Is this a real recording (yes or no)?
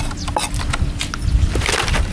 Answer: yes